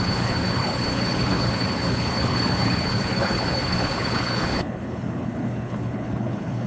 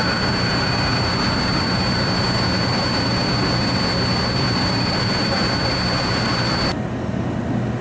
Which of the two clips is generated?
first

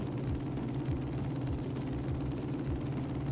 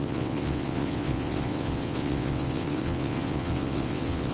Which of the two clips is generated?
second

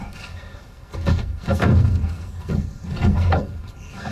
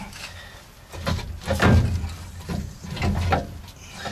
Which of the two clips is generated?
first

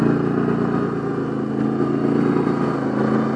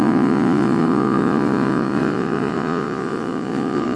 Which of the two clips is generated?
second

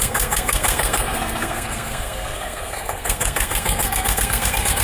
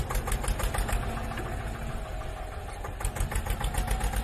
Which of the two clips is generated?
first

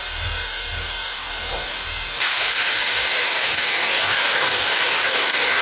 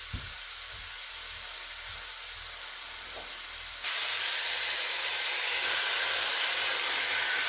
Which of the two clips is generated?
first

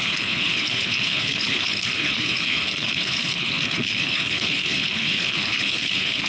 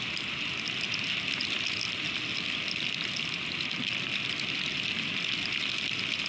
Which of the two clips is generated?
first